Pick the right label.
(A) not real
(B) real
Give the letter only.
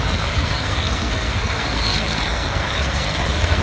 A